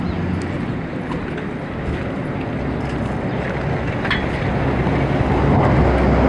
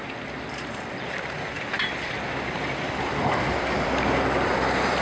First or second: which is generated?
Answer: second